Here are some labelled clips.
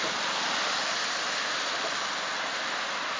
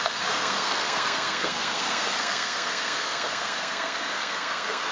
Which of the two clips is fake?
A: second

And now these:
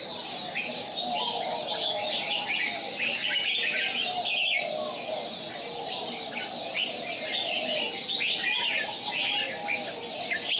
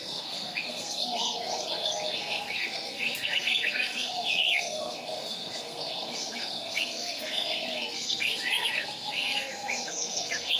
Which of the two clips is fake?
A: second